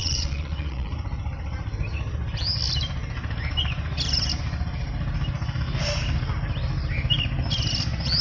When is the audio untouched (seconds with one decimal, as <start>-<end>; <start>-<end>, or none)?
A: 0.9-8.2